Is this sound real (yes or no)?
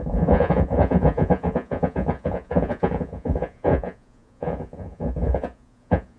no